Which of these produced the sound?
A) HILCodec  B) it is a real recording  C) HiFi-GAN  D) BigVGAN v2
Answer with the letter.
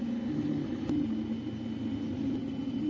B